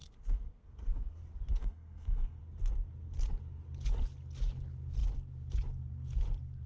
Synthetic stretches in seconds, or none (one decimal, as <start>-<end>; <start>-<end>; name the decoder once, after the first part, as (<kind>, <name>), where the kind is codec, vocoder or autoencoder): 0.0-1.2 (codec, SNAC); 1.6-2.4